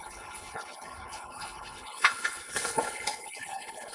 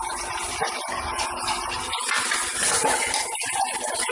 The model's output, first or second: first